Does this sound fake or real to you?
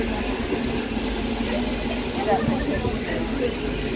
real